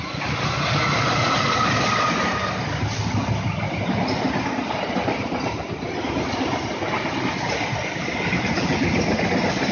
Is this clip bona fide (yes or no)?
yes